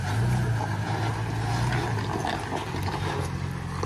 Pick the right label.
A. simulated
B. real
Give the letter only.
B